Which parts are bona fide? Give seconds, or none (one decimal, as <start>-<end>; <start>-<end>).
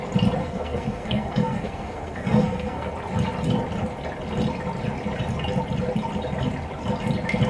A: 0.0-0.4; 2.9-7.5